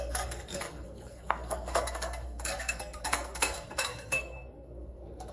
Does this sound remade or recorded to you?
remade